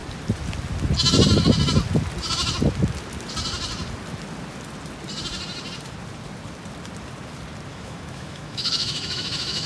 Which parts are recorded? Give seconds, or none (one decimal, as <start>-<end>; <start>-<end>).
0.0-7.7